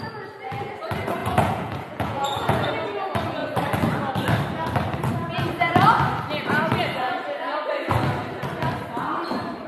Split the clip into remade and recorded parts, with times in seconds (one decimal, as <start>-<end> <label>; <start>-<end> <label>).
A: 0.0-1.2 recorded; 1.2-2.7 remade; 2.7-9.7 recorded